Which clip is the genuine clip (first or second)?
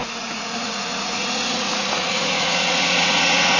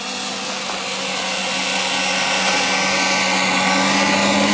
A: second